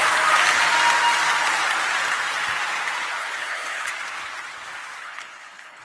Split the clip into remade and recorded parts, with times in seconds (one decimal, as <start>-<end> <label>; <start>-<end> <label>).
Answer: 0.0-3.2 recorded; 3.2-3.9 remade; 3.9-5.0 recorded; 5.0-5.8 remade